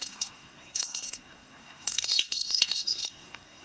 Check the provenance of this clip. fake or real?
fake